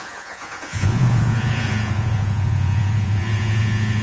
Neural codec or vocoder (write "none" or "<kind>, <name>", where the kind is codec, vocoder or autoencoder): vocoder, Vocos